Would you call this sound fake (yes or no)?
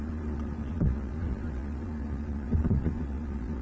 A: yes